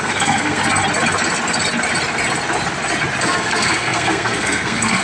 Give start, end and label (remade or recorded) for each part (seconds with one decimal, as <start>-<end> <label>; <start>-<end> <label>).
0.0-0.6 remade; 0.6-3.2 recorded; 3.2-5.0 remade